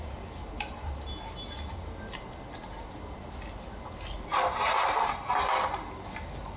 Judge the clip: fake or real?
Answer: real